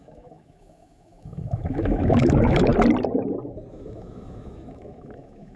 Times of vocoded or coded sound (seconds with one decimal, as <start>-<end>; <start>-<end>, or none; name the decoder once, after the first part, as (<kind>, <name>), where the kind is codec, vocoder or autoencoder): 0.0-2.7 (autoencoder, DAC-VAE); 3.7-5.6